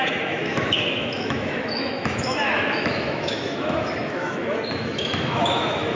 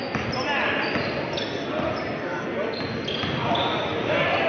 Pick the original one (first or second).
second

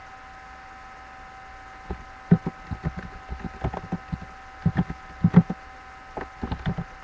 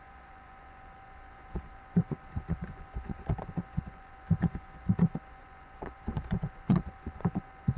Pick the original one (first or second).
first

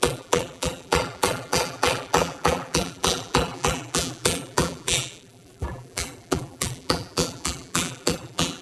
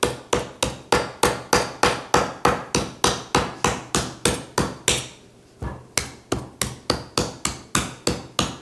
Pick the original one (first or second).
second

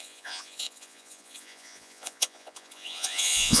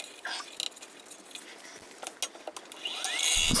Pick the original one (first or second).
second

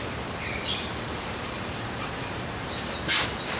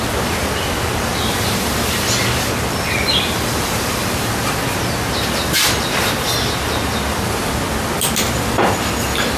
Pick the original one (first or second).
second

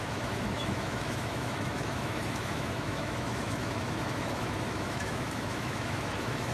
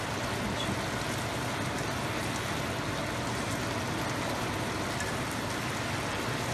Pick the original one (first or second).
second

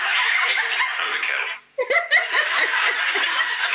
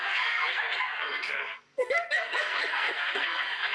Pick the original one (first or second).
first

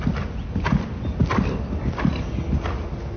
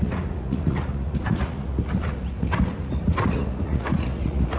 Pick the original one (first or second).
first